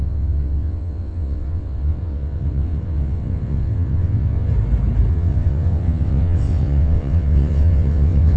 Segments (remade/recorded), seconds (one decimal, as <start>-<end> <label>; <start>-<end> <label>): 0.0-4.5 remade; 4.5-5.1 recorded; 5.1-8.4 remade